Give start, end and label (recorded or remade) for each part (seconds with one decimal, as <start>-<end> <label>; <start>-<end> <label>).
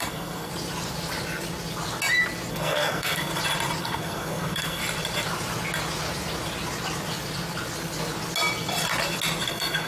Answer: 0.0-0.5 remade; 0.5-2.5 recorded; 2.5-3.3 remade; 3.3-3.8 recorded; 3.8-4.8 remade; 4.8-9.5 recorded; 9.5-9.9 remade